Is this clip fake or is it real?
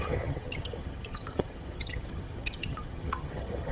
fake